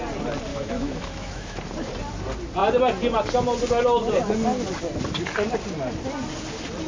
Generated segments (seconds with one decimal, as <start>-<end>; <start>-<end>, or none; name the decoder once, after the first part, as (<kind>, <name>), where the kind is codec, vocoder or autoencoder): 0.5-1.6 (autoencoder, DAC-VAE)